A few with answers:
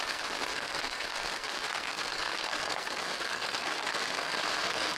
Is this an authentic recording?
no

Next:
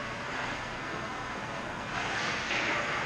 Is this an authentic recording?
no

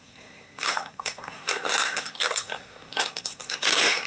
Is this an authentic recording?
no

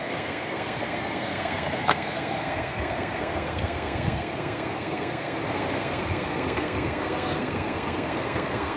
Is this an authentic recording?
no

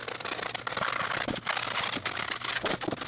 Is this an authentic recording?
yes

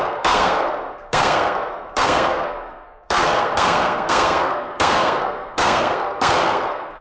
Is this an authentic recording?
no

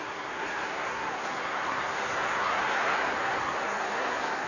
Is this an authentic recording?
no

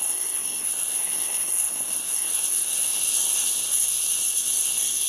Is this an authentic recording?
no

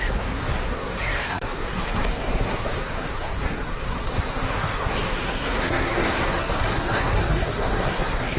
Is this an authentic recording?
no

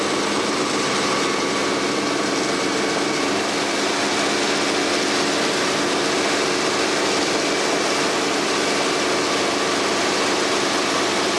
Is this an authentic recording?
yes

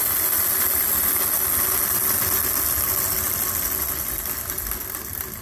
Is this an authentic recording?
yes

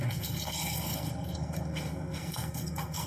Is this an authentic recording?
no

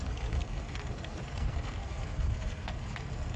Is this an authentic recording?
no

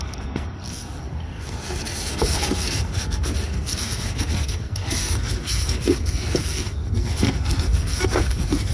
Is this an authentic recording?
no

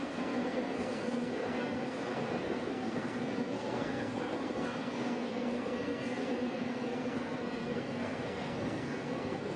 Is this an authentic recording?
no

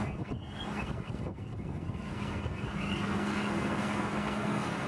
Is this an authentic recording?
no